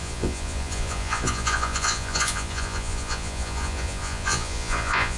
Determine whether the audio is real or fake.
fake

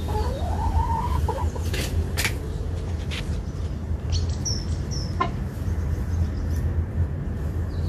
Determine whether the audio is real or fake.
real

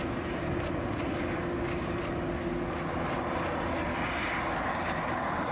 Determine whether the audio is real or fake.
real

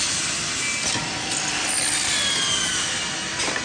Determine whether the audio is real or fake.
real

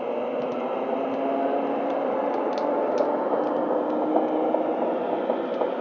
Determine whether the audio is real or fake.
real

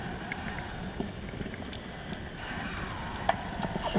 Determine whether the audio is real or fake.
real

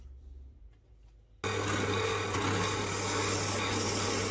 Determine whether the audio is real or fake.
real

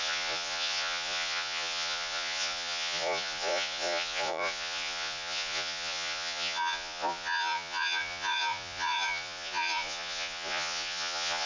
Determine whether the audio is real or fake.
fake